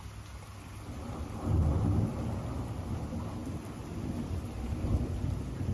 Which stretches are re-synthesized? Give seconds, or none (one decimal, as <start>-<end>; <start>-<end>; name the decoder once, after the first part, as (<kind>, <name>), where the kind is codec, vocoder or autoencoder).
none